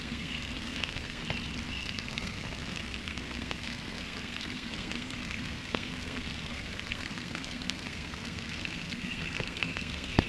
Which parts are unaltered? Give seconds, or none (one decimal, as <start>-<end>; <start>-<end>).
1.2-1.7